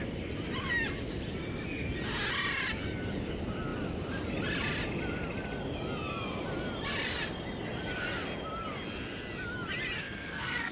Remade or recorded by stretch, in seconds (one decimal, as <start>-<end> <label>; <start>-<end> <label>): 0.0-10.0 recorded; 10.0-10.7 remade